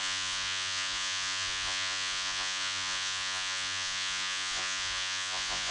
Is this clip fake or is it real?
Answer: fake